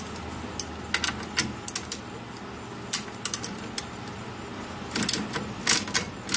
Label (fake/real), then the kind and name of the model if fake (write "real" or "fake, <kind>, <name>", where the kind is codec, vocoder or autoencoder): real